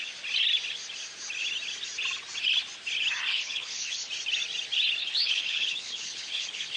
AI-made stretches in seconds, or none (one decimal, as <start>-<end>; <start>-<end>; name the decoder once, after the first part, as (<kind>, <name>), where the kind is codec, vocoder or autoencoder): 3.3-4.1 (codec, HILCodec); 5.0-6.8